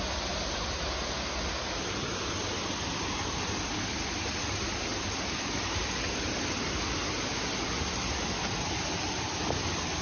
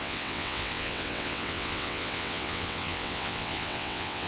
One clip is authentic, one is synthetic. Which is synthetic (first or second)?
second